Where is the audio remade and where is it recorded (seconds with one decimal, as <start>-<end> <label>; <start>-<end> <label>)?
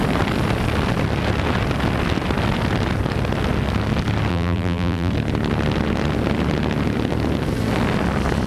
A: 0.0-4.3 recorded; 4.3-5.1 remade; 5.1-8.5 recorded